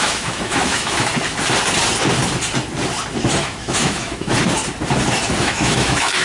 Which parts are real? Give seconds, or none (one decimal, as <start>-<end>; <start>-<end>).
1.1-3.4; 4.3-5.4